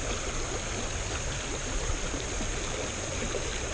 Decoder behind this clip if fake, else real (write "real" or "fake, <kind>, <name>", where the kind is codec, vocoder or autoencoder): real